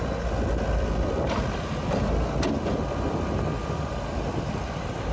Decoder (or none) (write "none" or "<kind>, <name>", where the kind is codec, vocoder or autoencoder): none